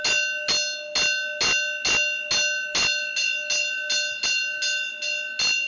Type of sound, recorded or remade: recorded